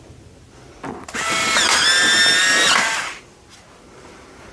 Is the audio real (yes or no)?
yes